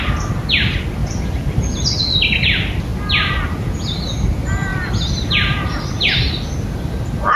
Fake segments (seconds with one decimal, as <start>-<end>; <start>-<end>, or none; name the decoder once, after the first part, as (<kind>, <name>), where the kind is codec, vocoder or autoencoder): 1.0-1.6 (vocoder, BigVGAN v2); 4.7-5.9